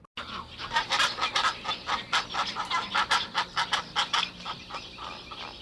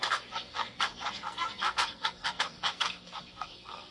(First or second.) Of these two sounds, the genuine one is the first